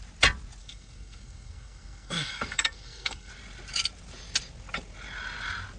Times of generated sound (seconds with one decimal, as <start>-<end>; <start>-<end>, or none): 0.6-3.3